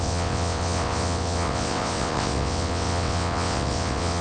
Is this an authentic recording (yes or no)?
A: no